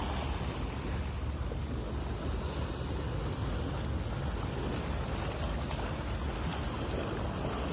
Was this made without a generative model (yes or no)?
yes